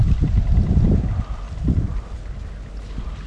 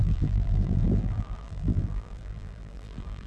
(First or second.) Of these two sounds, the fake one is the second